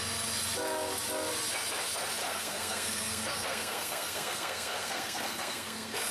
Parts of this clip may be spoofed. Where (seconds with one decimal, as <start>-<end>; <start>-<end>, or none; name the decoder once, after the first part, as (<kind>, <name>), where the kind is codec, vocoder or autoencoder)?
2.2-6.1 (codec, SNAC)